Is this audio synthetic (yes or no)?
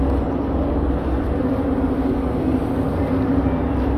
no